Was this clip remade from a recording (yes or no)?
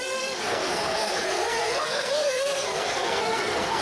yes